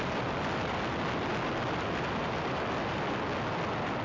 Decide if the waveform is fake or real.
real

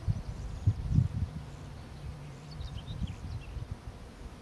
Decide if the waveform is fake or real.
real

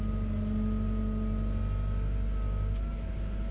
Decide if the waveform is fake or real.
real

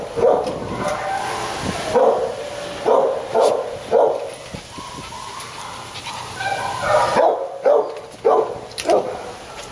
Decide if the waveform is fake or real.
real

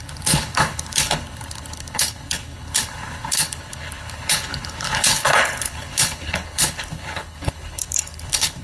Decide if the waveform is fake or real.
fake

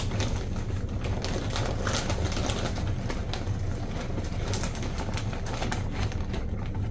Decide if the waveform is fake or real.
real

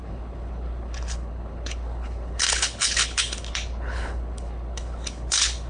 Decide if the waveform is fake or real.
fake